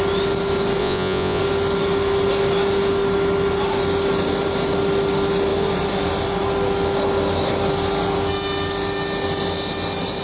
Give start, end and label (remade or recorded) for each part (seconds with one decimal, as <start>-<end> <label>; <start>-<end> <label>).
0.0-0.8 recorded; 0.8-1.4 remade; 1.4-10.2 recorded